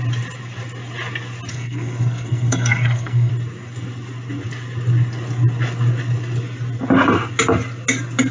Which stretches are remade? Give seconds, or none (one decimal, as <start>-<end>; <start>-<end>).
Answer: 1.5-3.3